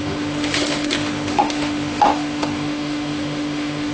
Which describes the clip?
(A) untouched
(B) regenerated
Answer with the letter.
B